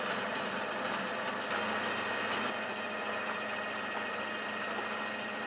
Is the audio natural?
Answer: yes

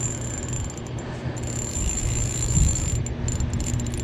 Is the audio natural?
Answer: yes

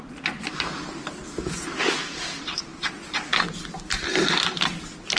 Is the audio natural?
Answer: yes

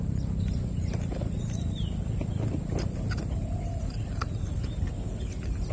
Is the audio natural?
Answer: yes